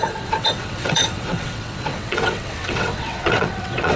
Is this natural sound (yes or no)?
no